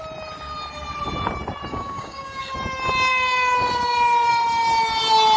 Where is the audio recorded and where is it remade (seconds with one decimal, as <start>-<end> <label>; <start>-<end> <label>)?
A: 0.0-1.7 recorded; 1.7-2.4 remade; 2.4-5.4 recorded